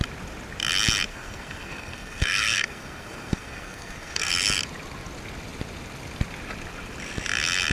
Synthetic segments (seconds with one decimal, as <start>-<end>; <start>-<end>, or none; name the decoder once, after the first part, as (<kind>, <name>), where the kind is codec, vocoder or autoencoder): 1.1-4.3 (codec, SNAC)